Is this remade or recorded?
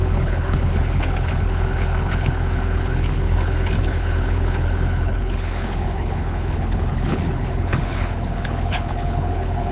remade